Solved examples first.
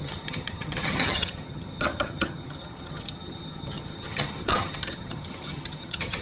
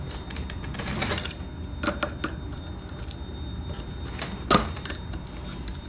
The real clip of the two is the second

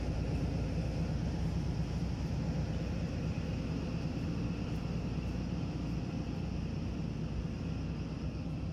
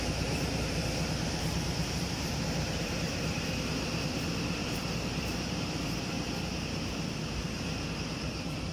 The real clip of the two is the first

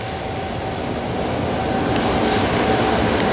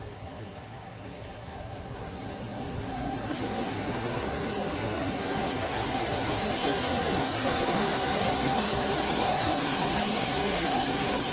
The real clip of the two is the first